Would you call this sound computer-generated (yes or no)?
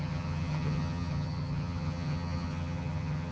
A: yes